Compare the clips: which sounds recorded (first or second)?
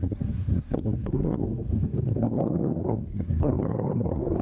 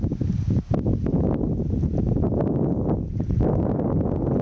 second